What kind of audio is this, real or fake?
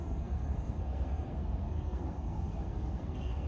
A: fake